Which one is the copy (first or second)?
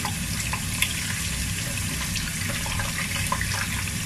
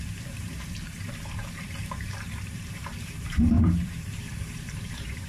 second